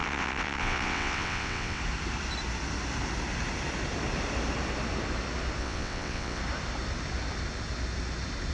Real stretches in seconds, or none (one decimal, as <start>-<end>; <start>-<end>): 1.8-5.6; 6.4-8.5